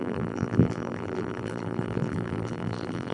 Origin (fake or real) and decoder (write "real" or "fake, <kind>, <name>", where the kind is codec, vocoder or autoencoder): fake, vocoder, BigVGAN v2